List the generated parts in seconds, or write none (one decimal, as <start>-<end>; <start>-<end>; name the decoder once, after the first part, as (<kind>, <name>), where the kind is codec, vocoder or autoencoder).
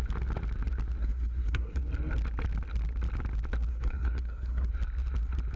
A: 1.0-1.8 (codec, SNAC); 3.7-4.7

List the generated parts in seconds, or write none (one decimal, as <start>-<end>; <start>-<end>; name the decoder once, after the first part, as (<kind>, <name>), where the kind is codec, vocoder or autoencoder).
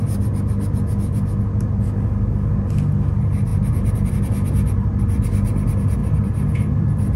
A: 3.5-4.1 (vocoder, BigVGAN v2); 6.0-7.2